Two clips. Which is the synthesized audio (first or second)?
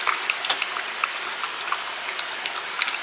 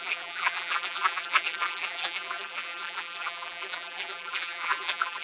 second